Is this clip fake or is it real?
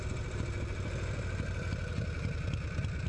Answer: real